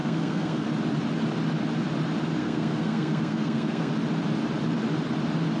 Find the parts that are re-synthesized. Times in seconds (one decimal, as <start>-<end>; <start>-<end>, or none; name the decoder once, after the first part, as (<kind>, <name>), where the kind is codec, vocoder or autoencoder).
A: 0.0-0.7 (codec, SNAC); 2.4-3.9